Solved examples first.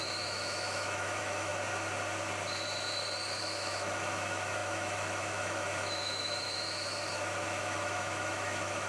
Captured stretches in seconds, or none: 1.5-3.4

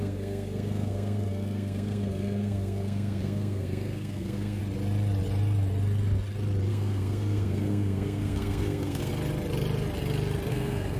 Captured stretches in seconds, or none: 4.6-6.7; 9.1-10.5

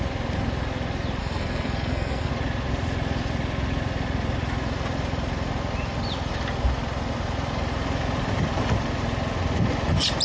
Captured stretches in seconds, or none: 0.0-1.2; 2.3-10.2